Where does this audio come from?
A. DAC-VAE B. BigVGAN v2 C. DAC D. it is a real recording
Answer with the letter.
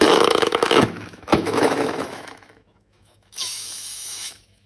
A